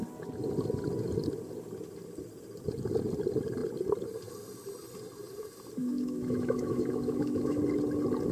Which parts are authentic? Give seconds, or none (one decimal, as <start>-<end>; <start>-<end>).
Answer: 0.0-5.8; 7.6-8.3